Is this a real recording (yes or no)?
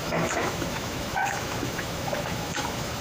no